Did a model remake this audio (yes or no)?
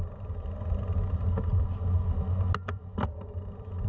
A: no